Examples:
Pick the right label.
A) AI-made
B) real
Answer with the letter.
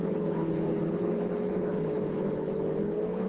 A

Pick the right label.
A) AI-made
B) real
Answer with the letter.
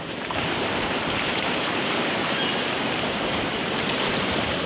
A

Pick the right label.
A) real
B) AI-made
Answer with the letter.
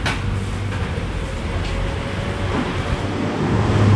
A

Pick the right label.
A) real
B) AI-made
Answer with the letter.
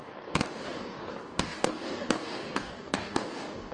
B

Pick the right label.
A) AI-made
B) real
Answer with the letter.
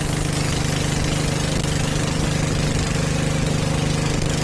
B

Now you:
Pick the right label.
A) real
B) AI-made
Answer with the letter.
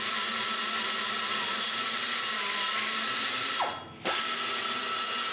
A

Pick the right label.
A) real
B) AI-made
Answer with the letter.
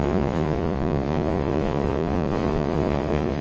B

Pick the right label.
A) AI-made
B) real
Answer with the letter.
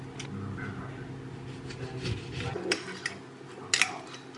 B